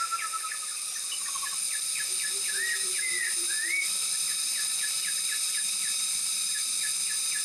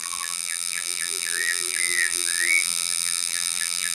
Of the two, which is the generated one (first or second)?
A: second